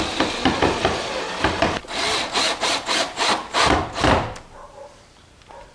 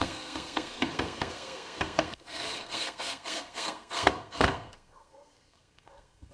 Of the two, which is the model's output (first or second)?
second